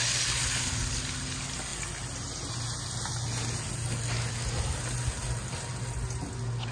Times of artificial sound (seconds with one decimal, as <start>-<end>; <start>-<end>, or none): none